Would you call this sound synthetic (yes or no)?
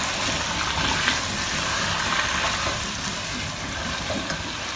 no